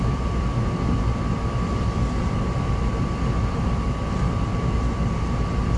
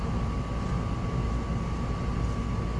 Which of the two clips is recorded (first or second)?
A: second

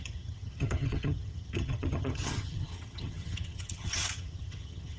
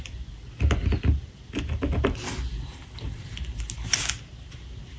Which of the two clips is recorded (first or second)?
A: second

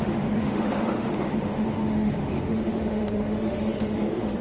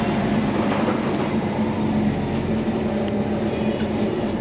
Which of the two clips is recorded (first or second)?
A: second